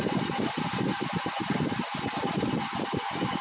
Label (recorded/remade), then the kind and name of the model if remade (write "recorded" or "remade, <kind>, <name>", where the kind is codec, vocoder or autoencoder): recorded